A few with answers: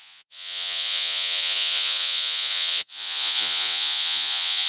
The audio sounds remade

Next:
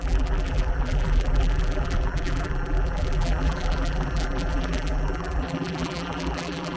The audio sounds remade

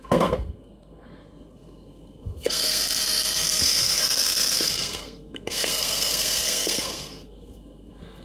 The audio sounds remade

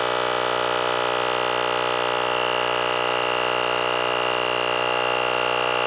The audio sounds recorded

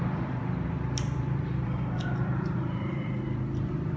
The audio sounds remade